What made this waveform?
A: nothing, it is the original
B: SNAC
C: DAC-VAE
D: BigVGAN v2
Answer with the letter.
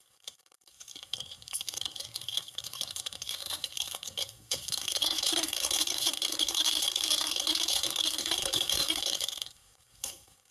B